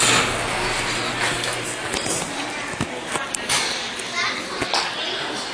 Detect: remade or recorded recorded